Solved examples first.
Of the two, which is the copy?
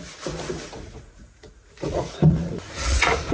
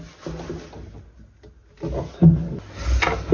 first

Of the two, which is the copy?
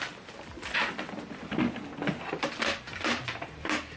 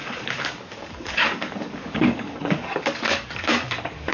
second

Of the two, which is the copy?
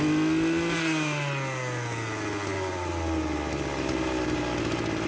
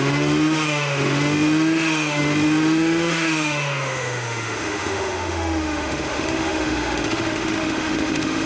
second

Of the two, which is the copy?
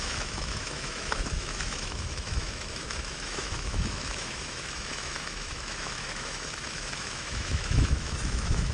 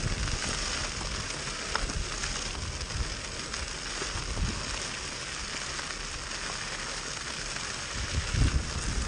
first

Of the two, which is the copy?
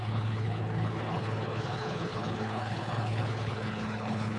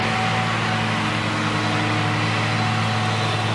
first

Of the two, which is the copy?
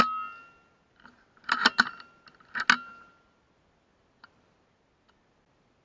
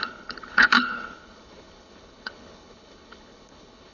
second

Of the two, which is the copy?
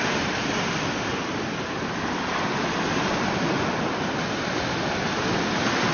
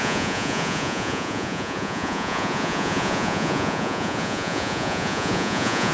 second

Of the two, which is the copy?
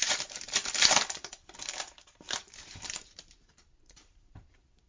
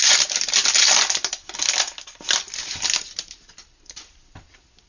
first